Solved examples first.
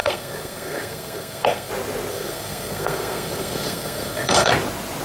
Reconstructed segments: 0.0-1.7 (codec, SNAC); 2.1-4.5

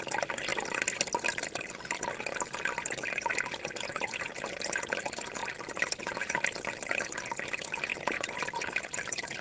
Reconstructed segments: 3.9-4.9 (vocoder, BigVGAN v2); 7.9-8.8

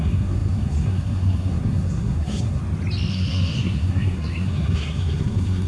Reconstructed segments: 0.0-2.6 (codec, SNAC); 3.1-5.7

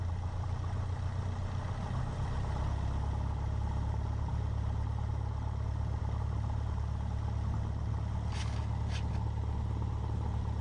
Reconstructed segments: none